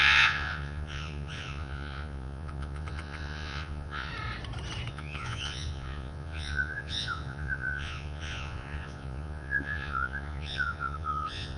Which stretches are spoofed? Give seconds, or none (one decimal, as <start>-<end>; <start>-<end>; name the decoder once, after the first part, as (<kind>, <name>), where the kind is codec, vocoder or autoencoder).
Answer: 0.0-4.1 (vocoder, Vocos); 4.9-11.6